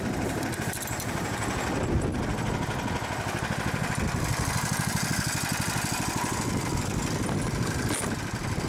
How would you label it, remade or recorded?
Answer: recorded